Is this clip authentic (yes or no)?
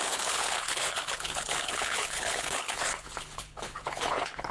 no